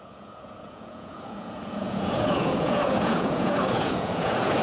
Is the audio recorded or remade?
remade